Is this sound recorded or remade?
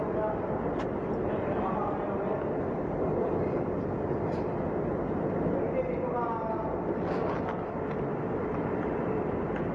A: recorded